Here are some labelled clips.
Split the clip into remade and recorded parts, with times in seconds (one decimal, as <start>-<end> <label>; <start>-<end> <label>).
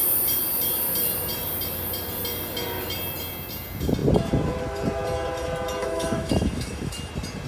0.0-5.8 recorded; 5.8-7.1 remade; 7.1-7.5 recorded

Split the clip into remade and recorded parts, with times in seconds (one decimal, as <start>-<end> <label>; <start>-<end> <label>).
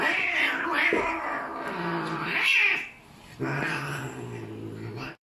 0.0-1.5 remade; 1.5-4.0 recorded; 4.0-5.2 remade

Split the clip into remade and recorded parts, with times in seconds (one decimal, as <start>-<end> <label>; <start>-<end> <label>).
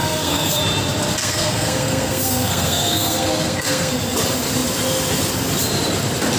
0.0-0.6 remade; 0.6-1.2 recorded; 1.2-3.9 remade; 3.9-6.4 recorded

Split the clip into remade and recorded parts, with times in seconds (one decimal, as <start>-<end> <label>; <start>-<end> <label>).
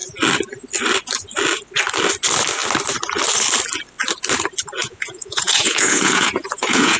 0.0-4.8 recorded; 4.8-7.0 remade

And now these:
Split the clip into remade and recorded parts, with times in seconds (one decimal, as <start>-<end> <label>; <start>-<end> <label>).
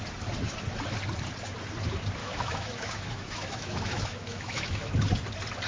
0.0-2.2 recorded; 2.2-4.9 remade; 4.9-5.7 recorded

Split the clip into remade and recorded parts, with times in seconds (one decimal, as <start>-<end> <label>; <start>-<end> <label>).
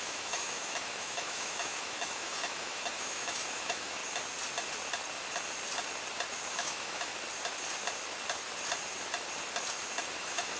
0.0-4.0 remade; 4.0-6.5 recorded; 6.5-7.1 remade; 7.1-10.2 recorded; 10.2-10.6 remade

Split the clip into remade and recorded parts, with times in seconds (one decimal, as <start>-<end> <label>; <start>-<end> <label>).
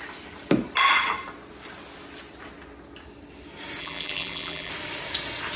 0.0-3.8 recorded; 3.8-4.7 remade; 4.7-5.6 recorded